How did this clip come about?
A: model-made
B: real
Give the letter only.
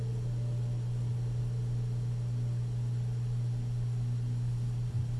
B